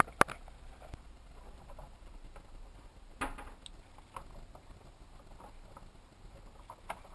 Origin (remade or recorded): recorded